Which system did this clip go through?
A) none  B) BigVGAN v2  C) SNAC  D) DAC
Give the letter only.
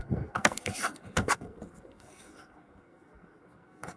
C